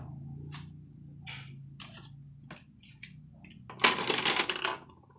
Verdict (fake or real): real